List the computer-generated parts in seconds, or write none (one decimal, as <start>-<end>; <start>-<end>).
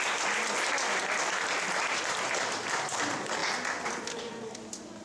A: none